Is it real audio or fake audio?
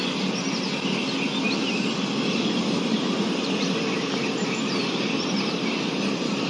real